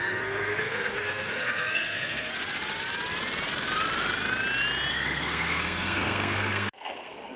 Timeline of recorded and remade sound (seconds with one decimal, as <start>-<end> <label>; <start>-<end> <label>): 0.0-2.3 remade; 2.3-4.9 recorded; 4.9-7.4 remade